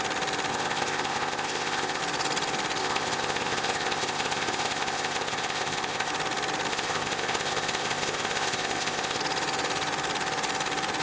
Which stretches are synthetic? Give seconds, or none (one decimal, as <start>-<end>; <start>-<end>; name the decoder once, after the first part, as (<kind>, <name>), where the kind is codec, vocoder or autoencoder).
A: 0.5-2.0 (codec, ZipCodec); 2.8-6.1; 6.7-9.2